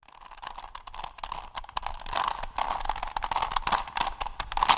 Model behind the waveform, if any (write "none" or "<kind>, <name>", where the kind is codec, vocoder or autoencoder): none